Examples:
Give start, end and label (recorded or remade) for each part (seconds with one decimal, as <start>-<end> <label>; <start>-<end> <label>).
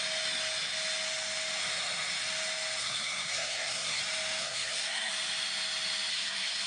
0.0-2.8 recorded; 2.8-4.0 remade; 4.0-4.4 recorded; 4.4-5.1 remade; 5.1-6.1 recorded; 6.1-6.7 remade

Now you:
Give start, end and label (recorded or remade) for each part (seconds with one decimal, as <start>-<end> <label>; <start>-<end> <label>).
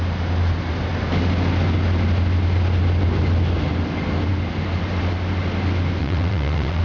0.0-6.0 recorded; 6.0-6.8 remade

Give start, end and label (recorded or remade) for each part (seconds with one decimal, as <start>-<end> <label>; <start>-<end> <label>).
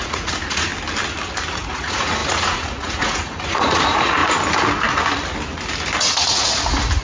0.0-0.7 remade; 0.7-1.5 recorded; 1.5-4.2 remade; 4.2-6.0 recorded; 6.0-7.0 remade